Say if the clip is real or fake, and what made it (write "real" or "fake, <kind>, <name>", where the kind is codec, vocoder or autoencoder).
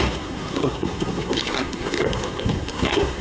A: fake, codec, SNAC